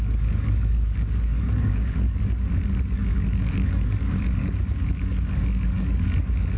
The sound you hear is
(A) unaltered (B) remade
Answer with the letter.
B